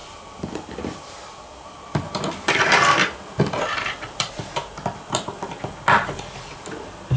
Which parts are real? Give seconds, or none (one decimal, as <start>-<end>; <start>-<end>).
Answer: none